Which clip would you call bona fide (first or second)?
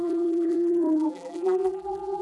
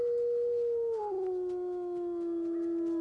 second